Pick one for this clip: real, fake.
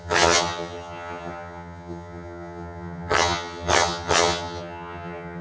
fake